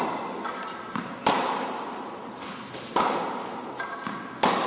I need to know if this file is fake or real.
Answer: real